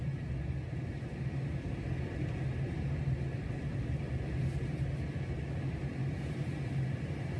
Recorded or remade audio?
recorded